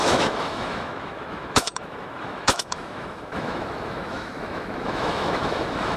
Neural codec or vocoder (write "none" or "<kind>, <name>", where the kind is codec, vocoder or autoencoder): autoencoder, DAC-VAE